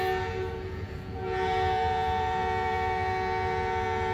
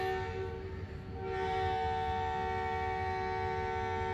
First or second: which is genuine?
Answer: second